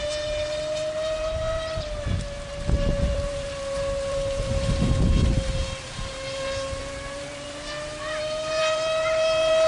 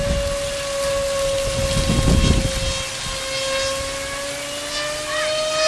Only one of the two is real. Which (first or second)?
second